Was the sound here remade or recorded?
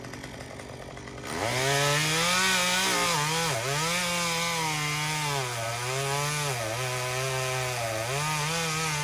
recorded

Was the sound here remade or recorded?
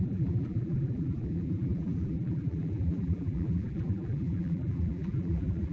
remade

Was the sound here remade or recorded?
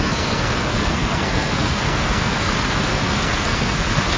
remade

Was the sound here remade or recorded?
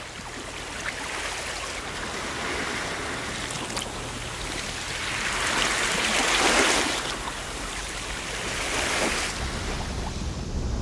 recorded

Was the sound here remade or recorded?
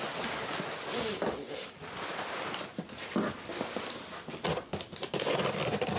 remade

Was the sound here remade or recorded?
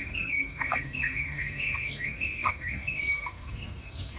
remade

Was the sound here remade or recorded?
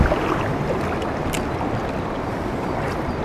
recorded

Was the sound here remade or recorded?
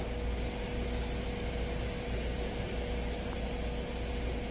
recorded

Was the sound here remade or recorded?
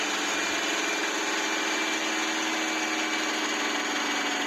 recorded